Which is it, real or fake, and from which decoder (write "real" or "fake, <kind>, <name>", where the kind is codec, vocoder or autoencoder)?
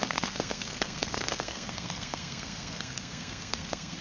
fake, codec, SNAC